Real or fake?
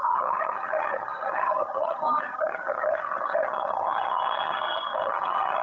fake